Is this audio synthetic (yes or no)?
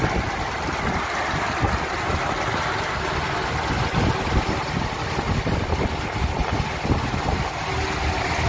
no